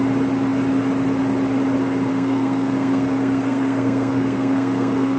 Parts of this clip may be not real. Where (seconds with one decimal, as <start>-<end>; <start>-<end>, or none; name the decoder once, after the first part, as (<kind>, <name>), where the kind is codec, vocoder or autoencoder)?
2.1-5.2 (codec, SNAC)